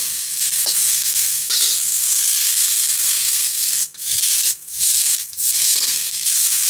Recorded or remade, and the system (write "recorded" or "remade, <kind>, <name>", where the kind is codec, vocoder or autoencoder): remade, codec, SNAC